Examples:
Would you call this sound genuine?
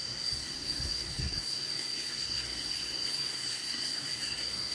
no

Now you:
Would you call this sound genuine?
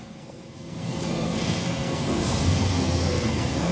no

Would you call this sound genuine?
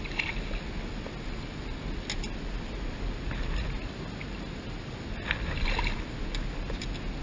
yes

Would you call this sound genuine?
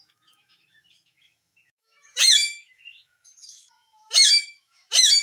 no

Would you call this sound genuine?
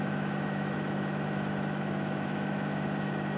no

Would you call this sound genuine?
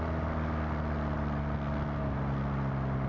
yes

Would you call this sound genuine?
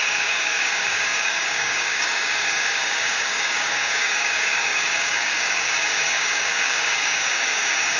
no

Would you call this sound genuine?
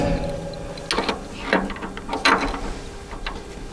yes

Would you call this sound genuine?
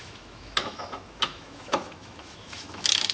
no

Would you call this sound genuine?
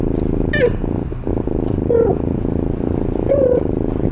yes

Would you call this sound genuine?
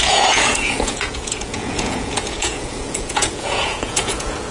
no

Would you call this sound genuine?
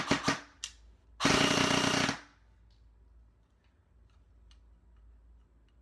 yes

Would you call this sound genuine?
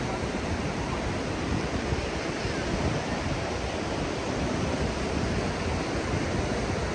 no